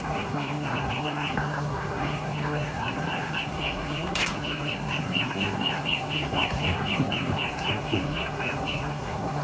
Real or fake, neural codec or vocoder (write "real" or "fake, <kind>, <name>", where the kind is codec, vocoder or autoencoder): fake, codec, SNAC